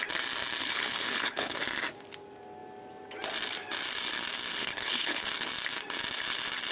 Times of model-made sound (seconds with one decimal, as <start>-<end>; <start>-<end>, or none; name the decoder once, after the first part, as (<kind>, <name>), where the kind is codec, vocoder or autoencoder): 0.6-1.6 (codec, HILCodec); 4.6-5.3